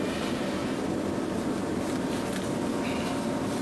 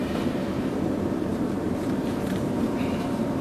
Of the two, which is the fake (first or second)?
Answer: second